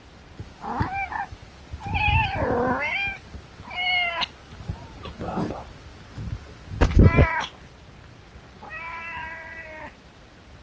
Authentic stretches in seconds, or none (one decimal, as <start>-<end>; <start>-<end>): 0.0-10.6